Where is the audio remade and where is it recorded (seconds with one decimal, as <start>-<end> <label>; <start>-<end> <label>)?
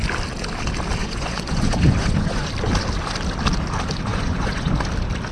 0.0-1.0 recorded; 1.0-2.5 remade; 2.5-4.1 recorded; 4.1-4.7 remade; 4.7-5.3 recorded